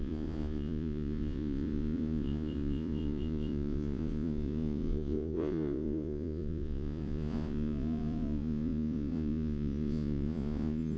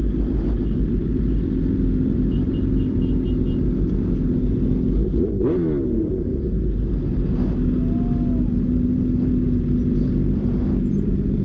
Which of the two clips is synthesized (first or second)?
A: first